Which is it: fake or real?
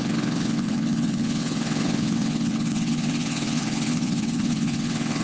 fake